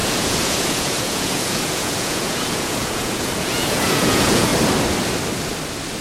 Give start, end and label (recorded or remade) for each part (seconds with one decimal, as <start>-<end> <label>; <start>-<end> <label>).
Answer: 0.0-4.5 remade; 4.5-6.0 recorded